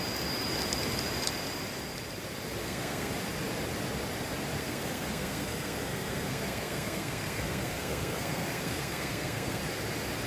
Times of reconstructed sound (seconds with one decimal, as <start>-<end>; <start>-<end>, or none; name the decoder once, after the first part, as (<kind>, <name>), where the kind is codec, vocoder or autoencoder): 2.6-3.1 (codec, SNAC); 4.6-9.6